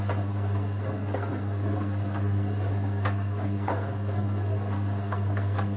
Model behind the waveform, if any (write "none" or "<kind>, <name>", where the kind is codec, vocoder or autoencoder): codec, SNAC